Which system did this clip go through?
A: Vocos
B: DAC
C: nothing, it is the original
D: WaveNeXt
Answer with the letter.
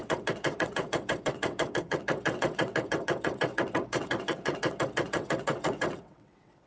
D